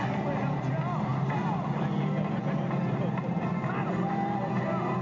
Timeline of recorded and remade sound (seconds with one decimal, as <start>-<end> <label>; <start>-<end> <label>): 0.0-5.0 recorded